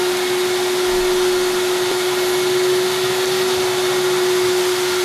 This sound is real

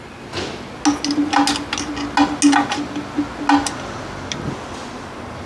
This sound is real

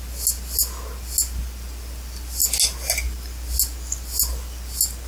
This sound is real